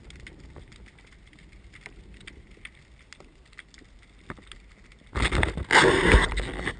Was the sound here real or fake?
real